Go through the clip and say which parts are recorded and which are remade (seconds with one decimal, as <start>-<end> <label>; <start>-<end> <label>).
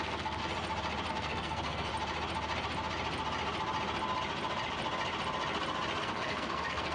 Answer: 0.0-0.4 remade; 0.4-1.1 recorded; 1.1-1.9 remade; 1.9-6.0 recorded; 6.0-6.9 remade